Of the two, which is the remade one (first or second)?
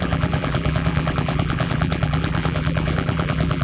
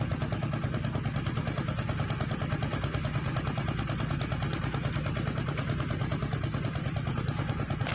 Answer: first